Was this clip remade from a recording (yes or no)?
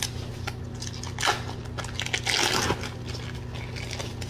no